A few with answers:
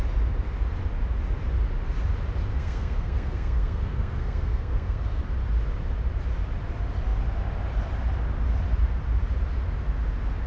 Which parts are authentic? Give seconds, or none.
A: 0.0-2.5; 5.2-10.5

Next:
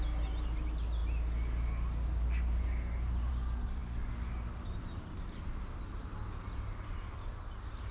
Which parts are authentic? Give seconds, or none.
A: 0.0-7.9